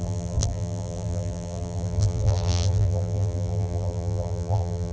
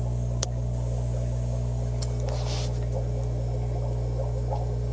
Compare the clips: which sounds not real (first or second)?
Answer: first